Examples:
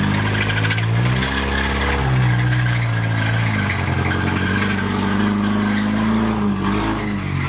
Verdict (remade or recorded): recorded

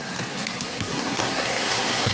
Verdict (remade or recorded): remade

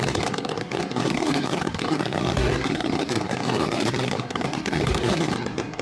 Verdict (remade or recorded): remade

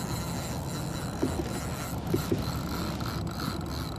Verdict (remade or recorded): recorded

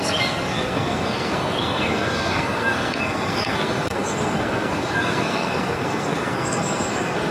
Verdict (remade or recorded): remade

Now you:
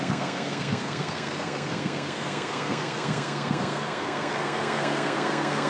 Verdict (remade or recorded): remade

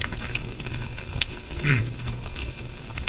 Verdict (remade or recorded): remade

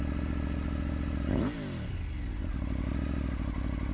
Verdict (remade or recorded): recorded